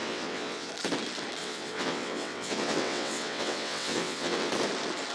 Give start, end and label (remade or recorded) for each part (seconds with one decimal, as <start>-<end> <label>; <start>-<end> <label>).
0.0-0.7 remade; 0.7-1.4 recorded; 1.4-4.5 remade; 4.5-5.1 recorded